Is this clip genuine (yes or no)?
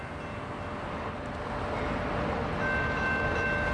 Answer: yes